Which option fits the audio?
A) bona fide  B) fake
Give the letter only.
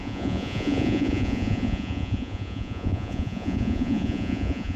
B